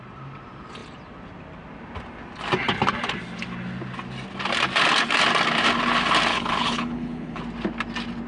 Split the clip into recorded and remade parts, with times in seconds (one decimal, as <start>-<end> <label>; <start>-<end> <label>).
0.0-6.3 recorded; 6.3-7.4 remade; 7.4-8.3 recorded